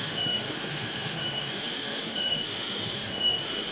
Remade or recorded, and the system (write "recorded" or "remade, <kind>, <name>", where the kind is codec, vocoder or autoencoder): remade, autoencoder, DAC-VAE